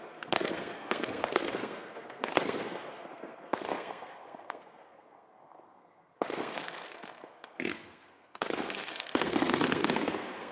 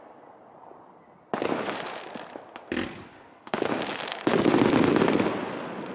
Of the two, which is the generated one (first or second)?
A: first